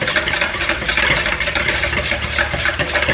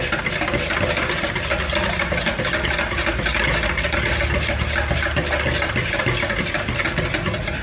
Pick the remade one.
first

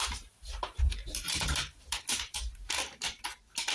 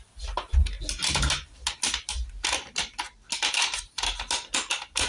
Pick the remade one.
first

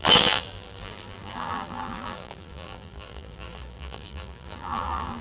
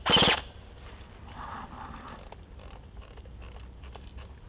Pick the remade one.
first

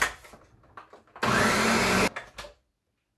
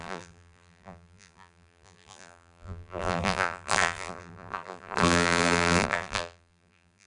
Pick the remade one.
second